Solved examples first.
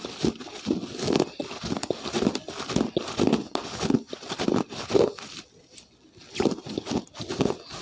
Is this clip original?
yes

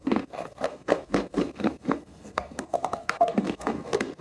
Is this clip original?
no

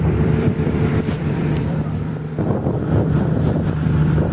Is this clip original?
no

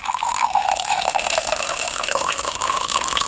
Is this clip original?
no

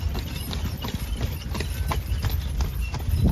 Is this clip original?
yes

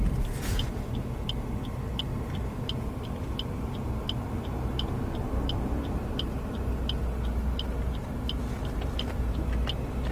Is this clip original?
yes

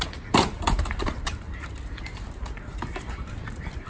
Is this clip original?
no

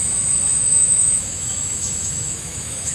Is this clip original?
no